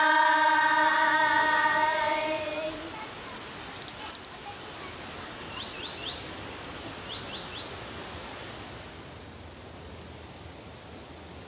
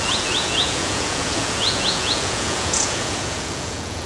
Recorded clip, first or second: first